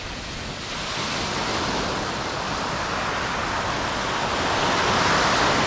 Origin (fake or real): real